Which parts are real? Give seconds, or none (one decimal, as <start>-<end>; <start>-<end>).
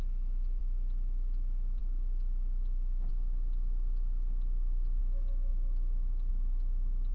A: 0.0-7.1